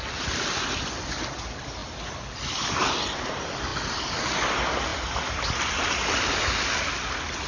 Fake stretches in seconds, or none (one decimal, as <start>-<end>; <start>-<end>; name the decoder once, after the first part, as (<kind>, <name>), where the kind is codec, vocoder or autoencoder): none